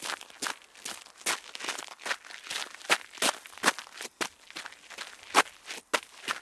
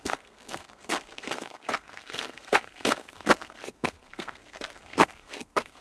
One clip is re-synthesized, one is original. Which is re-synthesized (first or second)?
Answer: second